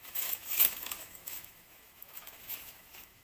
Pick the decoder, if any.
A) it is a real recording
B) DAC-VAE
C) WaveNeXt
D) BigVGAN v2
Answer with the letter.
B